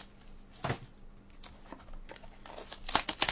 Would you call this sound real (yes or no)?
yes